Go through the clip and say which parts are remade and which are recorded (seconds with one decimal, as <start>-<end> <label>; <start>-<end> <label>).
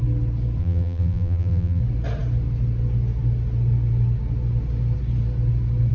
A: 0.0-0.6 recorded; 0.6-1.8 remade; 1.8-5.9 recorded